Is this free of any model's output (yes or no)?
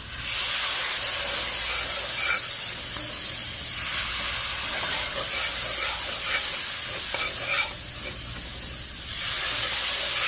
yes